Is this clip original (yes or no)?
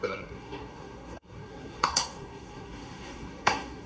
no